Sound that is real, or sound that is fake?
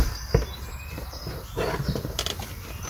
fake